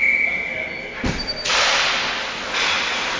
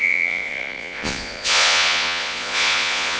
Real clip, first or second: first